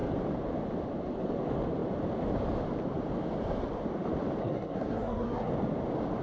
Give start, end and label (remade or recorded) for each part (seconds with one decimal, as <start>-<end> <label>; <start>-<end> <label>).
0.0-4.4 recorded; 4.4-5.5 remade; 5.5-6.2 recorded